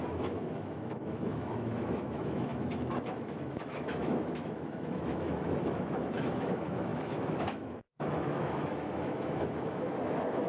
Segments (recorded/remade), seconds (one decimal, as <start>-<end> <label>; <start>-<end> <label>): 0.0-10.5 remade

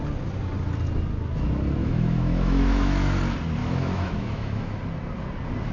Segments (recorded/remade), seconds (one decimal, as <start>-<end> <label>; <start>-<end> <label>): 0.0-1.8 recorded; 1.8-3.2 remade; 3.2-3.6 recorded; 3.6-4.8 remade; 4.8-5.7 recorded